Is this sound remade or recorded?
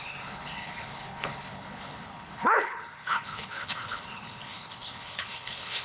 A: remade